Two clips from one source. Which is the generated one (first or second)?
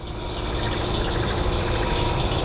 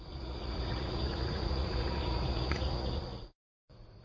second